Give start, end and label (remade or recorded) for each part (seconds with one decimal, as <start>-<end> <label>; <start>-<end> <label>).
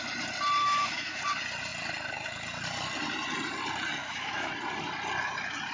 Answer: 0.0-0.6 recorded; 0.6-1.2 remade; 1.2-4.0 recorded; 4.0-4.5 remade; 4.5-5.7 recorded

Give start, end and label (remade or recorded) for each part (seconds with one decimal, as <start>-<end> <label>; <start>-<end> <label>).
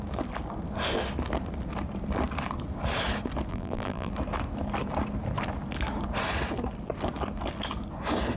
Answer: 0.0-3.5 recorded; 3.5-4.1 remade; 4.1-8.4 recorded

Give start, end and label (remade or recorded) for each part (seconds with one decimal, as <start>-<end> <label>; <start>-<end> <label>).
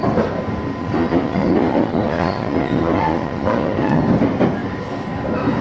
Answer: 0.0-0.8 recorded; 0.8-4.0 remade; 4.0-5.6 recorded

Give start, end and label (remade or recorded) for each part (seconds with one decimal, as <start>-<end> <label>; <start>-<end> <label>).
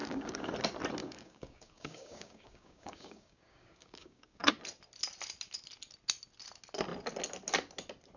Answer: 0.0-0.5 remade; 0.5-1.0 recorded; 1.0-4.5 remade; 4.5-8.2 recorded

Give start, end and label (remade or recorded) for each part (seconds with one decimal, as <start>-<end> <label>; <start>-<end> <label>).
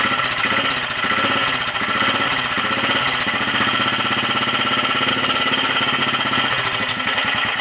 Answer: 0.0-5.1 recorded; 5.1-6.0 remade; 6.0-7.6 recorded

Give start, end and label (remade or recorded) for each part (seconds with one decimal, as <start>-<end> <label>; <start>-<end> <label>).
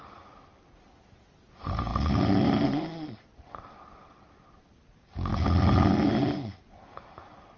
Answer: 0.0-7.6 recorded